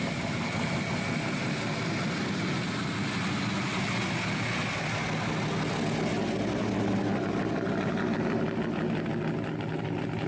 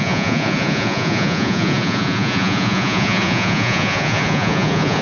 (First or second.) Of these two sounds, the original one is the first